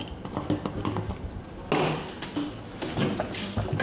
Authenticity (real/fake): real